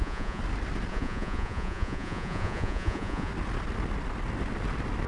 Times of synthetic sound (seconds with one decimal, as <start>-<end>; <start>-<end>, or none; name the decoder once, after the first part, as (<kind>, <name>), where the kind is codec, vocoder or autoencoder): 0.0-0.4 (vocoder, Vocos); 0.9-3.3